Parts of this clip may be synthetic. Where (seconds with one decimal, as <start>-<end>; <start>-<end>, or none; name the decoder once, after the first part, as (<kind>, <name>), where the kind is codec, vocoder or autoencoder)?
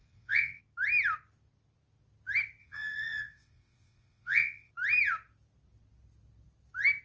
0.0-0.6 (vocoder, WaveNeXt); 2.6-4.7